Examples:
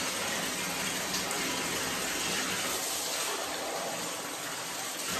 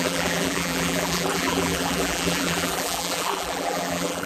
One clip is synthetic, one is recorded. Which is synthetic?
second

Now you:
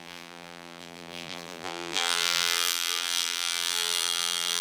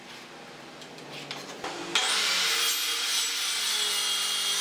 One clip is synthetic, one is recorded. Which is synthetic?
first